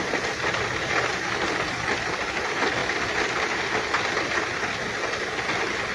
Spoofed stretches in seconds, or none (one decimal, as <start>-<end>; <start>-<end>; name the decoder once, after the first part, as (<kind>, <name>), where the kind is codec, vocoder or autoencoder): none

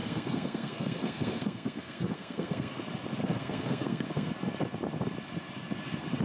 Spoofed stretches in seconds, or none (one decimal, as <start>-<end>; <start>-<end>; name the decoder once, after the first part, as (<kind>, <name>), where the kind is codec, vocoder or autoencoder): 0.0-2.8 (codec, SNAC); 3.2-4.3

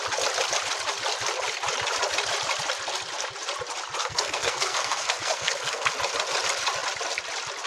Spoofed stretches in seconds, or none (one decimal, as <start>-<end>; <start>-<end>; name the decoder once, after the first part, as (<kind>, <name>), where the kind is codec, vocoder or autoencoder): 4.0-5.9 (codec, SNAC)

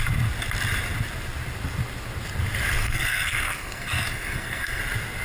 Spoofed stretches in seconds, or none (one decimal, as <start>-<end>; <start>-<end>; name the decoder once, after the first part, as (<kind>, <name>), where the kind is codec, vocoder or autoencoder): 2.8-4.8 (codec, SNAC)

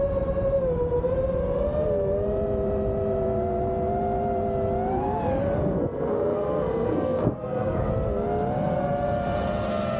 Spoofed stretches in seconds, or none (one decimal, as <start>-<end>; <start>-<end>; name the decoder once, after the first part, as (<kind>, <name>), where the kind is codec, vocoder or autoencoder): 5.6-7.9 (codec, SNAC)

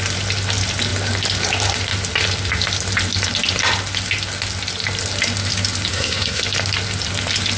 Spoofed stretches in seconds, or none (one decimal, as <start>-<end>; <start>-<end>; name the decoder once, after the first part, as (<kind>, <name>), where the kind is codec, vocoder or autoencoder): 5.9-6.4 (codec, SNAC)

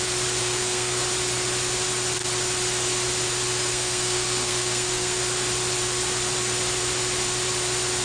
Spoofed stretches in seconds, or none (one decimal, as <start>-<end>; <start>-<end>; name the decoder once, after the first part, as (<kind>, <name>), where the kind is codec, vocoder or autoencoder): 0.4-1.0 (codec, SNAC); 3.7-5.2

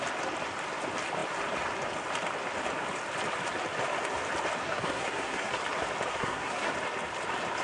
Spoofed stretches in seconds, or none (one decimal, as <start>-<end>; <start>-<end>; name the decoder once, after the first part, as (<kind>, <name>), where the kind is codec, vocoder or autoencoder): 4.6-5.5 (codec, SNAC); 6.1-6.7